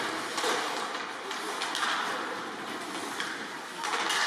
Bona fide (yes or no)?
yes